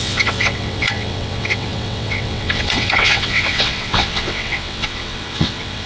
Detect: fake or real fake